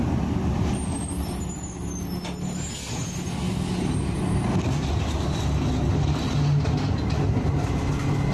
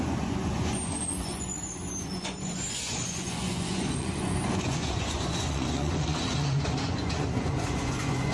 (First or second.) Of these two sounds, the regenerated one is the second